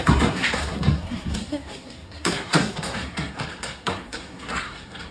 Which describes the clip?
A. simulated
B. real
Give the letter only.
A